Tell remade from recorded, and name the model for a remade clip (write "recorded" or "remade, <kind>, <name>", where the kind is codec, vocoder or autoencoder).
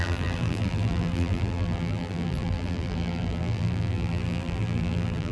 remade, vocoder, BigVGAN v2